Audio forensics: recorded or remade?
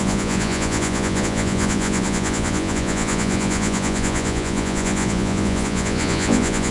remade